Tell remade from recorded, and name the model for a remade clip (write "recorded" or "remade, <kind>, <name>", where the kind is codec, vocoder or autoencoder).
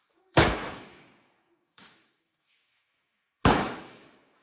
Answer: remade, autoencoder, DAC-VAE